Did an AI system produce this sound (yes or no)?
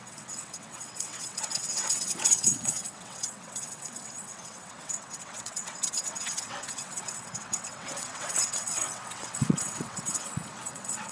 yes